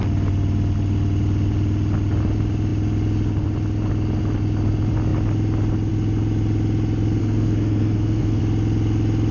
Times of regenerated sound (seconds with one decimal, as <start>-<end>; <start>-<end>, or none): 7.2-8.4

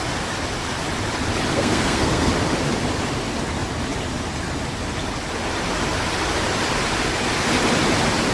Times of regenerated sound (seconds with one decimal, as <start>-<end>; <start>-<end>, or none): 1.5-2.3